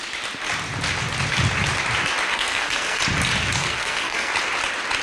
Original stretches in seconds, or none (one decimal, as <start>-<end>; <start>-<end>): 0.0-2.3; 3.0-3.6; 4.3-5.0